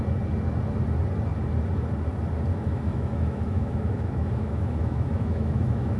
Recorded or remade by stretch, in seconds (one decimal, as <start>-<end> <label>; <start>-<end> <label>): 0.0-2.5 recorded; 2.5-6.0 remade